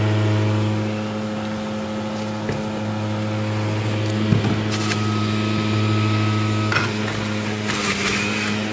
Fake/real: real